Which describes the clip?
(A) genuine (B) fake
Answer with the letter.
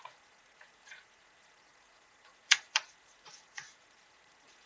B